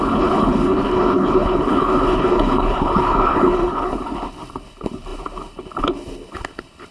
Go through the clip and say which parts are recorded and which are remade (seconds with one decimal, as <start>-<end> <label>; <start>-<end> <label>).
0.0-6.9 remade